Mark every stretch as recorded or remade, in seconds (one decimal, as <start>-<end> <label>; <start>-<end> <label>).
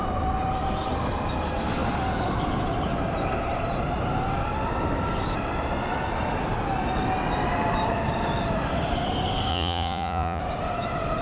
0.0-9.5 recorded; 9.5-10.4 remade; 10.4-11.2 recorded